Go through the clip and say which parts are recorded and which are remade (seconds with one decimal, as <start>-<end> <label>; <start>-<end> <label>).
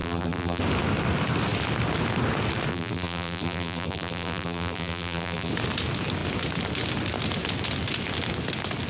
0.0-0.6 remade; 0.6-2.7 recorded; 2.7-5.5 remade; 5.5-8.9 recorded